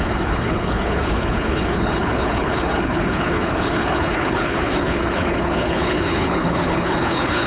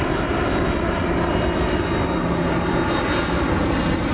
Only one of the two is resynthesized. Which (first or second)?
first